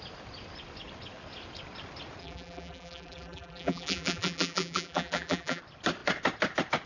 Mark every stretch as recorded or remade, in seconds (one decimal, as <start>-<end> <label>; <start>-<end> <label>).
0.0-2.2 recorded; 2.2-5.6 remade; 5.6-6.9 recorded